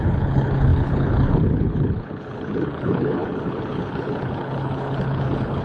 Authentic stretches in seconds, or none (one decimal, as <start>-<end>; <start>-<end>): none